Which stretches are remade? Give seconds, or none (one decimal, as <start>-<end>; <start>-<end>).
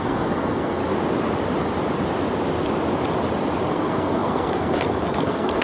0.0-0.8; 3.7-5.6